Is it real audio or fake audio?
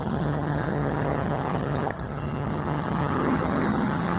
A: fake